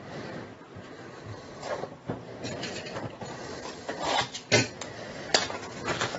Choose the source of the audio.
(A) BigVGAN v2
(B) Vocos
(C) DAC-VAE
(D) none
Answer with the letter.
D